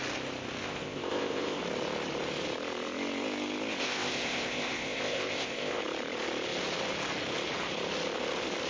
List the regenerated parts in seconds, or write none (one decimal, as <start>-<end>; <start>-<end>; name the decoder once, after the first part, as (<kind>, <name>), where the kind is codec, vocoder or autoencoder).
0.6-1.6 (codec, ZipCodec); 3.8-5.8